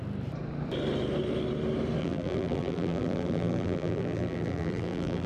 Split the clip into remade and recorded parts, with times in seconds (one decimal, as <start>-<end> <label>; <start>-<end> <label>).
0.0-2.0 recorded; 2.0-5.3 remade